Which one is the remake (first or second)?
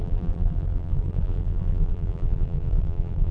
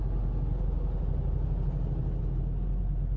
first